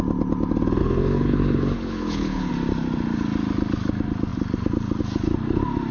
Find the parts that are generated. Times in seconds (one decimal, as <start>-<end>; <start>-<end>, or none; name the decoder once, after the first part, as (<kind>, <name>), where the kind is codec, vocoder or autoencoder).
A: 0.8-2.5 (codec, HILCodec)